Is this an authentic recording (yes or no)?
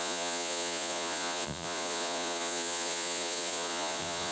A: no